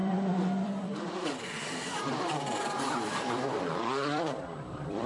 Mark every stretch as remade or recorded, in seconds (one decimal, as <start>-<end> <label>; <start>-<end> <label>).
0.0-5.1 remade